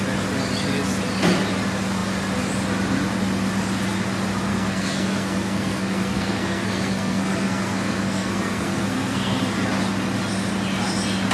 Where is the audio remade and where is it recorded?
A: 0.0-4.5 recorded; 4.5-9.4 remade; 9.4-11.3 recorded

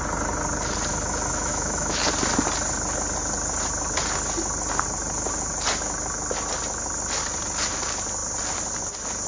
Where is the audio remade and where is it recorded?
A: 0.0-0.9 recorded; 0.9-2.0 remade; 2.0-9.3 recorded